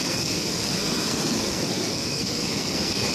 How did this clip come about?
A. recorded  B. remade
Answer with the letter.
B